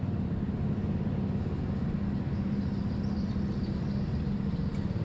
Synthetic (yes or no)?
no